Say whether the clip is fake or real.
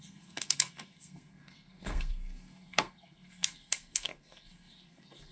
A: fake